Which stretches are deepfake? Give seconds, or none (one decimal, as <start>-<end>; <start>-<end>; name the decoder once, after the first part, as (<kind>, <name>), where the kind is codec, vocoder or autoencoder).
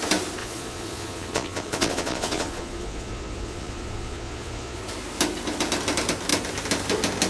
0.4-4.8 (vocoder, Vocos)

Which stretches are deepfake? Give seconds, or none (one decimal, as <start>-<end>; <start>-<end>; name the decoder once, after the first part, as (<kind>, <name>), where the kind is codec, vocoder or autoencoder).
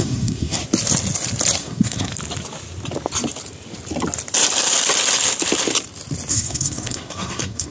0.0-0.6 (codec, SNAC); 1.6-2.1; 6.3-7.7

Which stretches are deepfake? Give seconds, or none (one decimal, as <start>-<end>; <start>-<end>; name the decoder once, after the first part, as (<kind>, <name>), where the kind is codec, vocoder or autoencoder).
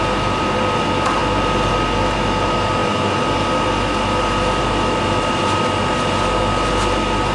none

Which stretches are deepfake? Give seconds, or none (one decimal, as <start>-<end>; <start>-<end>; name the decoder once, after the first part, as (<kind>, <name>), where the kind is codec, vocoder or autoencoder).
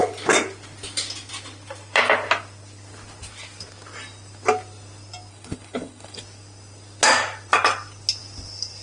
5.3-6.2 (codec, HILCodec)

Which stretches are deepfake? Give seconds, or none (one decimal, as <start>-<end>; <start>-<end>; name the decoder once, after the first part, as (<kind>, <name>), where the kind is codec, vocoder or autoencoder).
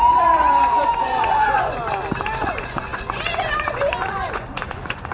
0.0-1.8 (vocoder, Vocos); 2.4-5.1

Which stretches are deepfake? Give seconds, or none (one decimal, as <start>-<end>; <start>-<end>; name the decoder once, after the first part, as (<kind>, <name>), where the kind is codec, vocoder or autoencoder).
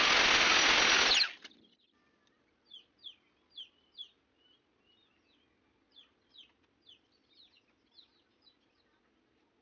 none